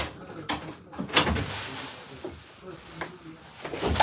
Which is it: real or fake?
real